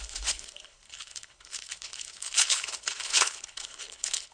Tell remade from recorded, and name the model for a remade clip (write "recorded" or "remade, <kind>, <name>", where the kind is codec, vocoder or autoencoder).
remade, codec, HILCodec